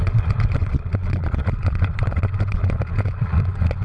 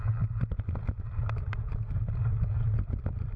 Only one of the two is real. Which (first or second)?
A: second